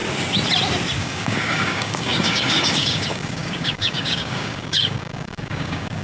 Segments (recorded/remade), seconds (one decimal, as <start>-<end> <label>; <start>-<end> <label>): 0.0-1.0 recorded; 1.0-6.0 remade